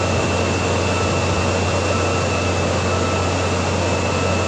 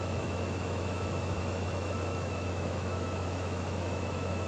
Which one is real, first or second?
first